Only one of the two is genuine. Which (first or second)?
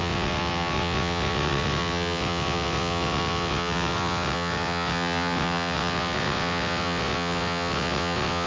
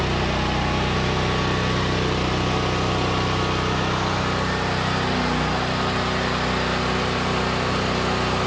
second